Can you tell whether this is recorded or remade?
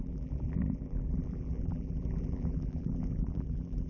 remade